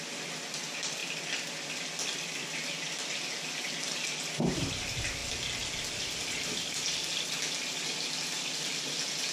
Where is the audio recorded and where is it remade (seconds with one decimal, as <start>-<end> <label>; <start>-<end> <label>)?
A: 0.0-9.3 recorded